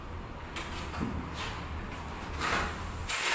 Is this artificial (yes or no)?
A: no